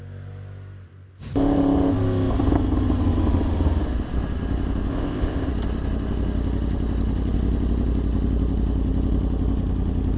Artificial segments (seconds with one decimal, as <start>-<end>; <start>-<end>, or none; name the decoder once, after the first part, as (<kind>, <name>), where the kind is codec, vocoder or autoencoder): 4.9-5.5 (codec, ZipCodec)